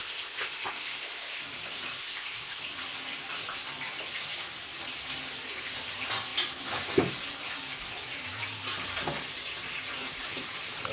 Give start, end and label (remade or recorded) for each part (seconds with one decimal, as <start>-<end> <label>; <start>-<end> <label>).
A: 0.0-1.4 remade; 1.4-2.0 recorded; 2.0-2.6 remade; 2.6-10.9 recorded